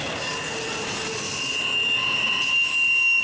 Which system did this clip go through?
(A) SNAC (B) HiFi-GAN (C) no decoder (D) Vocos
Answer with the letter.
C